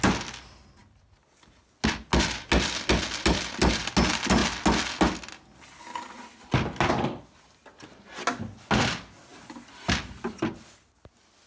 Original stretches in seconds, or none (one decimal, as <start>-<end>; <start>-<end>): 0.0-11.5